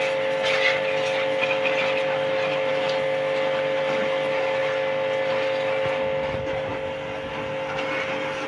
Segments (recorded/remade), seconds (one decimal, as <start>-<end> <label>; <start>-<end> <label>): 0.0-8.5 recorded